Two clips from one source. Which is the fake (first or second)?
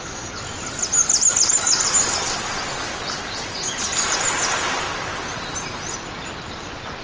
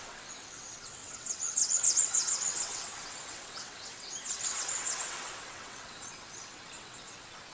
second